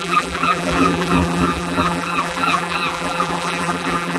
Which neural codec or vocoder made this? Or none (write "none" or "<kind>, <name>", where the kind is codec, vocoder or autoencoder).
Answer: vocoder, BigVGAN v2